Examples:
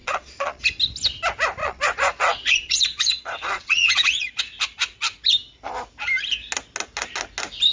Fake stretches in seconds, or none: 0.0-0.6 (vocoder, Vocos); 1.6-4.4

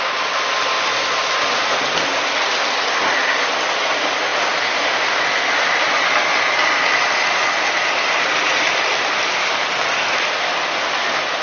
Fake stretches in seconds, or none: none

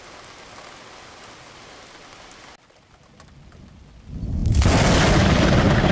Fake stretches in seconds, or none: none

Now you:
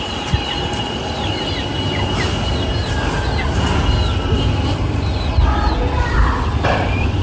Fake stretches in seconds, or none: none

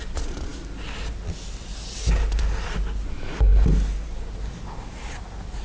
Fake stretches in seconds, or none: none

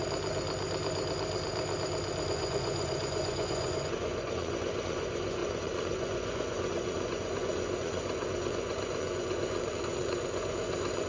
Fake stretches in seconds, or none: 2.3-11.1 (vocoder, Vocos)